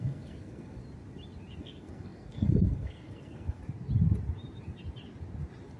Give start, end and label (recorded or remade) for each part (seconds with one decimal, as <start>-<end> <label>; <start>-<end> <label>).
0.0-0.8 remade; 0.8-1.6 recorded; 1.6-3.6 remade; 3.6-5.8 recorded